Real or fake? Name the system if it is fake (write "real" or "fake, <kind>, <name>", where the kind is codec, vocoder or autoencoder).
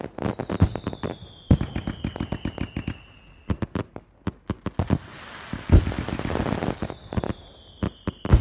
real